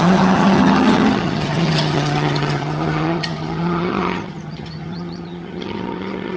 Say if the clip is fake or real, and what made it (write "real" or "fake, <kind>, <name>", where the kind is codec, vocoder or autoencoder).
fake, vocoder, HiFi-GAN